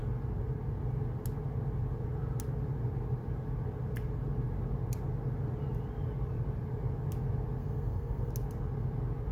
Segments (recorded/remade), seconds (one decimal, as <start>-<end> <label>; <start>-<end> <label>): 0.0-7.6 recorded; 7.6-8.3 remade; 8.3-9.3 recorded